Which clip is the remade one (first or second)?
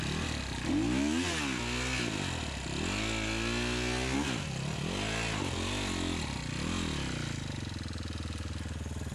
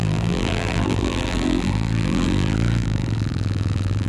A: second